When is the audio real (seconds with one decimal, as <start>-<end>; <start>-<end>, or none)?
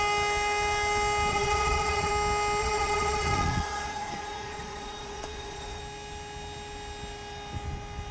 0.0-1.3; 2.1-2.6; 5.8-8.1